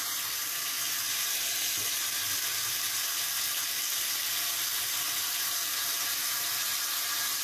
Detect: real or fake real